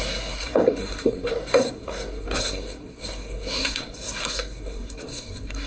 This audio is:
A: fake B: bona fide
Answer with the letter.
A